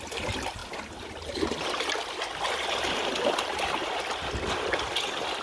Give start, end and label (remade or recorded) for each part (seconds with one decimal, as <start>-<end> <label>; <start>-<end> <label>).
0.0-5.4 recorded